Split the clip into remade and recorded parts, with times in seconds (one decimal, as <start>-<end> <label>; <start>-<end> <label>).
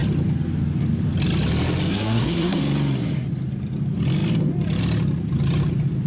0.0-1.9 recorded; 1.9-2.6 remade; 2.6-6.1 recorded